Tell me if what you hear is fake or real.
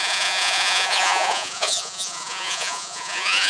fake